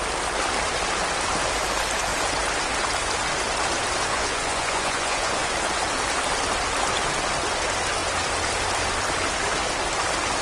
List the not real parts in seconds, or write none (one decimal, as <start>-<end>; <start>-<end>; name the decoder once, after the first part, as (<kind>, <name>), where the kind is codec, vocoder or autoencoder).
4.1-5.5 (vocoder, Vocos)